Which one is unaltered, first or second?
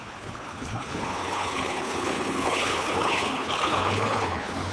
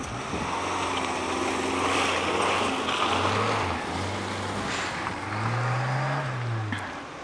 second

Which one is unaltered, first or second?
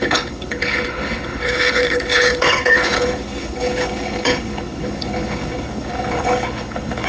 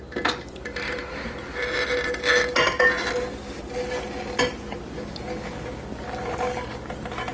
second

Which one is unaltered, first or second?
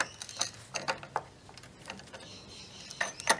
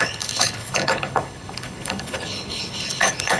first